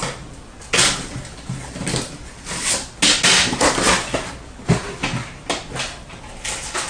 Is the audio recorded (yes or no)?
yes